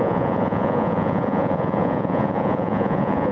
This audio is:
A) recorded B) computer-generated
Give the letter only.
B